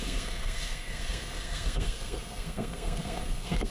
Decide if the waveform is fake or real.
fake